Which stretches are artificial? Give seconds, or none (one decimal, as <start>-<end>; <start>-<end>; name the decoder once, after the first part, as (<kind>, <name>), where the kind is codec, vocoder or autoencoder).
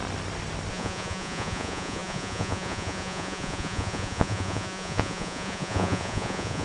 0.7-6.6 (vocoder, Vocos)